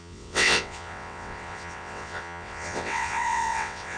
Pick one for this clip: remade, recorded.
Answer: remade